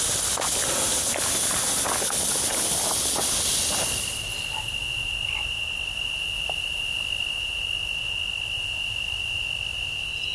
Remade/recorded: recorded